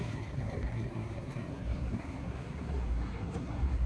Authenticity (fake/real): fake